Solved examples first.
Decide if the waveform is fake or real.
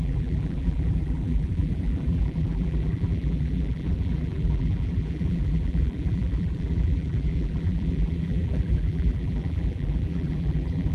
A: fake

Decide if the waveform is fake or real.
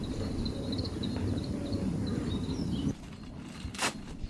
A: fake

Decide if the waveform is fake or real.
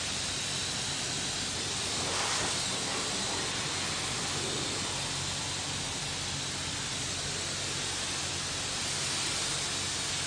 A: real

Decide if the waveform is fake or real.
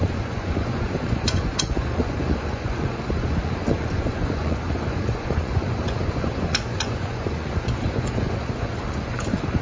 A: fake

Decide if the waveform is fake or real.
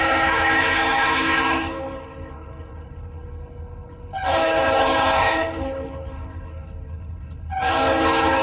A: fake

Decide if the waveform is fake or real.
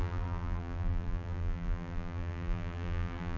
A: fake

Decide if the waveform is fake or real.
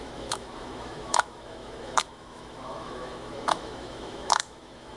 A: fake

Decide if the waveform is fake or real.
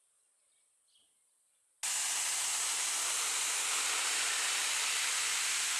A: real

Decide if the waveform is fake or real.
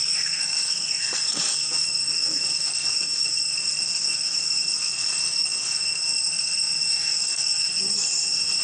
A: fake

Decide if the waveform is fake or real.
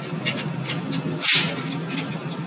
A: real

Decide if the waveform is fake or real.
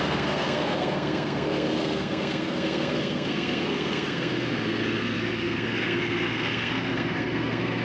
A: fake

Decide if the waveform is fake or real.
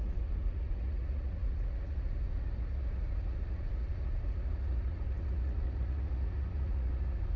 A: fake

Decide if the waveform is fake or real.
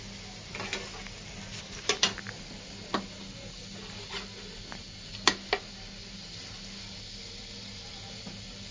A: real